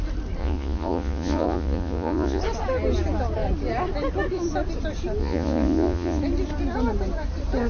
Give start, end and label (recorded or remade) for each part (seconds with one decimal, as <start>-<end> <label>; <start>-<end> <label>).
0.0-0.4 recorded; 0.4-2.4 remade; 2.4-5.2 recorded; 5.2-6.2 remade; 6.2-7.7 recorded